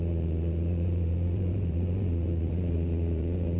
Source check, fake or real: fake